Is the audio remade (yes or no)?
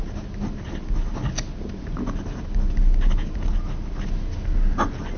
no